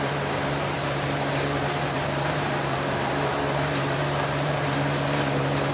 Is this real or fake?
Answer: fake